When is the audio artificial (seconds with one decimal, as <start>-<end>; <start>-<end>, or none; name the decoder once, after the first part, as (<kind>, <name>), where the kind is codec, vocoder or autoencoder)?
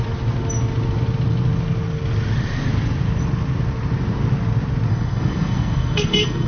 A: 4.9-6.5 (codec, SNAC)